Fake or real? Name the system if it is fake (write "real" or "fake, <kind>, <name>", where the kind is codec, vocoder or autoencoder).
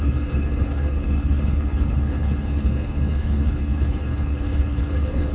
fake, codec, HILCodec